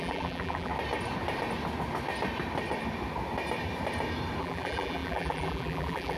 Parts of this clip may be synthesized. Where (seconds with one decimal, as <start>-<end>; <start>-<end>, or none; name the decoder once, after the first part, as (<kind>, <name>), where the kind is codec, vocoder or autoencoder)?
0.0-0.7 (vocoder, BigVGAN v2); 4.4-6.2